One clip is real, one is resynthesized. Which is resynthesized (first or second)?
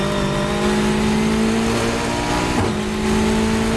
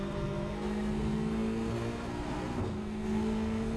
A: second